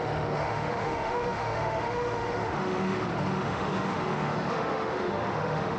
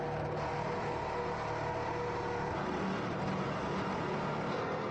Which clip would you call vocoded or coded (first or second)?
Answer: first